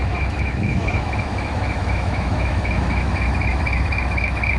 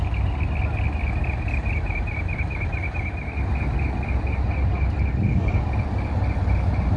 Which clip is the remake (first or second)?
first